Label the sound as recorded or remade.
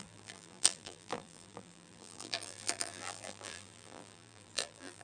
remade